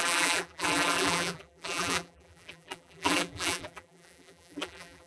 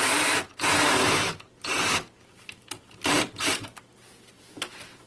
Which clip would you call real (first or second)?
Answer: second